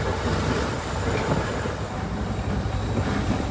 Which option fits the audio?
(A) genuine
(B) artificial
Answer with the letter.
A